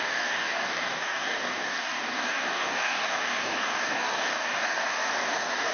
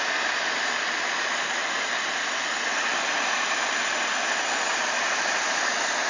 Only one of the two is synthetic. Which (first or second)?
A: first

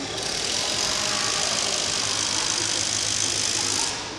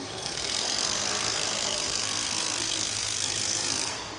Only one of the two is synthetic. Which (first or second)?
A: second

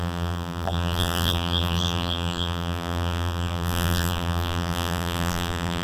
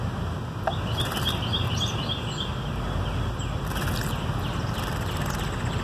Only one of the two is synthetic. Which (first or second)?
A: first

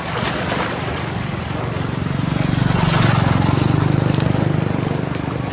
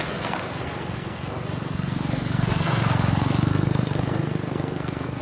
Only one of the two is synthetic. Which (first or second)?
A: second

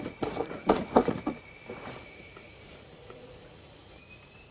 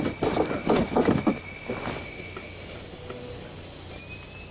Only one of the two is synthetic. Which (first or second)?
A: first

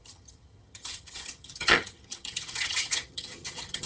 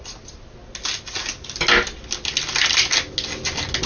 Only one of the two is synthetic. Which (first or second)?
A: first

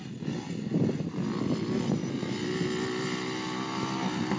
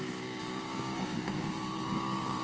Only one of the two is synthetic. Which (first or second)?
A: second